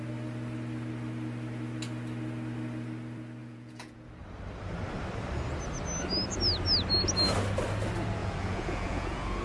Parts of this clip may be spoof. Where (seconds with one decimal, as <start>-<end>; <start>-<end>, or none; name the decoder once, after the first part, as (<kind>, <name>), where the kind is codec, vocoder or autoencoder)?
3.4-4.1 (vocoder, Vocos); 8.2-9.4

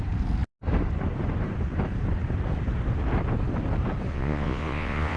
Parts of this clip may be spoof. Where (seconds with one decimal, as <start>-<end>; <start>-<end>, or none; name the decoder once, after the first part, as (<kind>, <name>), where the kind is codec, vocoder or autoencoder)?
4.1-5.2 (vocoder, Vocos)

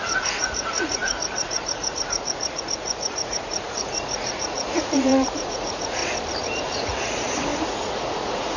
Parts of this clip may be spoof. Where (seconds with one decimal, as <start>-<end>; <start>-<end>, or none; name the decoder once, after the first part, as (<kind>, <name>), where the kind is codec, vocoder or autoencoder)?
0.0-6.0 (vocoder, Vocos); 6.5-8.6

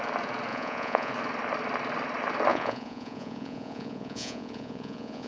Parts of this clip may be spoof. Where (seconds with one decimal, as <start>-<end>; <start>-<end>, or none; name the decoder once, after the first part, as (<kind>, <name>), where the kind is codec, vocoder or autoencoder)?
0.5-1.1 (vocoder, Vocos); 2.5-5.3

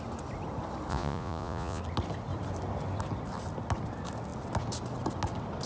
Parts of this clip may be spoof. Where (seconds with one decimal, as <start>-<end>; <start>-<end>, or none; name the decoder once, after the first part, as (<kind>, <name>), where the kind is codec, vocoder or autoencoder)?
0.9-1.8 (vocoder, Vocos)

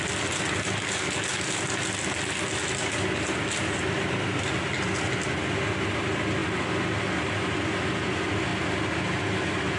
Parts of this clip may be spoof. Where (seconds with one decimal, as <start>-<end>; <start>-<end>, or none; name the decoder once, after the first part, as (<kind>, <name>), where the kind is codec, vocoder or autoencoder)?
none